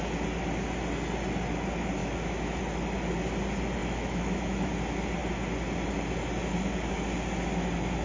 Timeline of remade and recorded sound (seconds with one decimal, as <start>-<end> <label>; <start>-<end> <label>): 0.0-2.0 recorded; 2.0-2.6 remade; 2.6-3.8 recorded; 3.8-4.7 remade; 4.7-8.0 recorded